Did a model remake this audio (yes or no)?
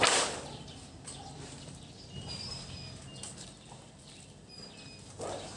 no